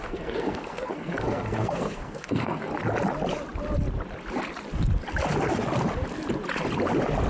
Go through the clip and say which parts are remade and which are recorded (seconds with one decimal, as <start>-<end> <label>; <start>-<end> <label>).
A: 0.0-2.7 remade; 2.7-7.3 recorded